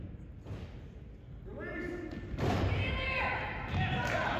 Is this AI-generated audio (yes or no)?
no